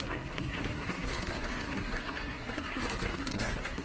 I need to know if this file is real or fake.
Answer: fake